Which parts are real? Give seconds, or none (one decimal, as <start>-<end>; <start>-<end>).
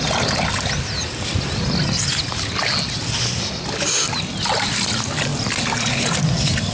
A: 0.0-6.7